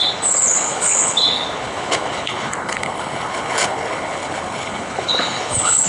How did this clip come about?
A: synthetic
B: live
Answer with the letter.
A